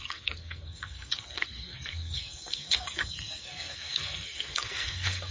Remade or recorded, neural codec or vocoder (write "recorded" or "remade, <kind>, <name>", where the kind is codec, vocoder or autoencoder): remade, codec, SNAC